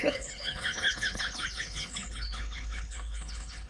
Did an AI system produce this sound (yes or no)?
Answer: yes